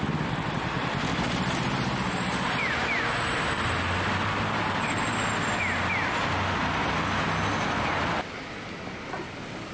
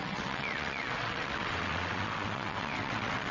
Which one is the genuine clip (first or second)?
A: first